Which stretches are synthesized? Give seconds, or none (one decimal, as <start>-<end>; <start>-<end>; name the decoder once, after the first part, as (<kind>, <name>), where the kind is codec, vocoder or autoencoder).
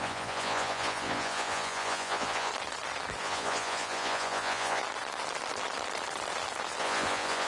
0.0-2.5 (vocoder, Vocos); 3.2-4.8; 6.8-7.5